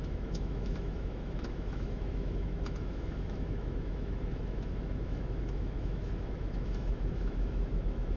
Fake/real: fake